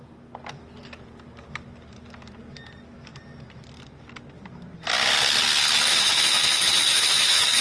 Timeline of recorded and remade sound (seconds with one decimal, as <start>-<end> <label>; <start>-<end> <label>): 0.0-5.9 recorded; 5.9-7.6 remade